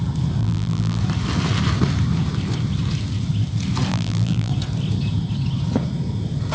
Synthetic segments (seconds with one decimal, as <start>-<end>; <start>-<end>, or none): 0.4-1.0; 3.9-4.5